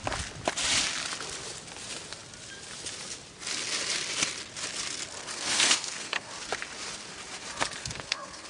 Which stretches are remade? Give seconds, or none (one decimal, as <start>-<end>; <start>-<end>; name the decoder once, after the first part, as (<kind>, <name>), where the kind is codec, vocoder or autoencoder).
5.3-6.3 (codec, SNAC); 7.8-8.5